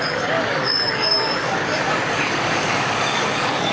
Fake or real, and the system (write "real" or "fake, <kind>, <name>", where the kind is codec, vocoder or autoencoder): fake, codec, DAC